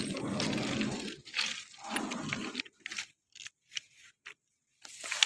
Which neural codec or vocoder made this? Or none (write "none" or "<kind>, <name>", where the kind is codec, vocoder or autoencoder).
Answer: none